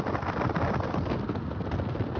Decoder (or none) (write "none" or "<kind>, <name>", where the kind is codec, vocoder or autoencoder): none